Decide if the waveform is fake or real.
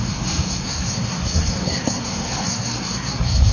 fake